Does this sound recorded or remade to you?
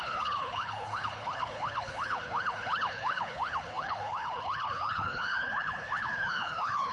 remade